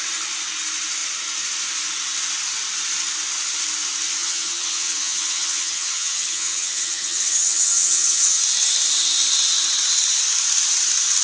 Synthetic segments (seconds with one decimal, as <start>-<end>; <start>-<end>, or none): 4.2-8.4